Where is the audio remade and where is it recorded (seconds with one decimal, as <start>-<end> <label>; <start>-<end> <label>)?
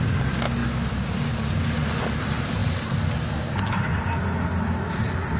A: 0.0-5.4 recorded